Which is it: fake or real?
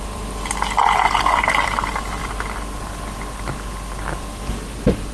fake